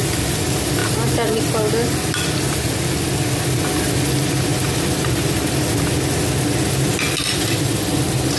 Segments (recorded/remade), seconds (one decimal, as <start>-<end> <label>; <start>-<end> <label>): 0.0-8.4 recorded